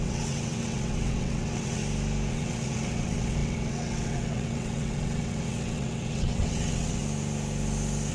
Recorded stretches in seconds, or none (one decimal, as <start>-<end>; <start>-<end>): 1.8-2.3; 7.0-8.1